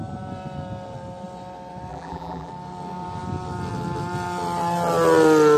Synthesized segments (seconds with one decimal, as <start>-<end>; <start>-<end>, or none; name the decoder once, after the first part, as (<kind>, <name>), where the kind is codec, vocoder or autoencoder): 1.9-2.5 (vocoder, BigVGAN v2)